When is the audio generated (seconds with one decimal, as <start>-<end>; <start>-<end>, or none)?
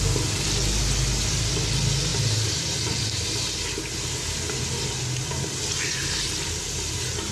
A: none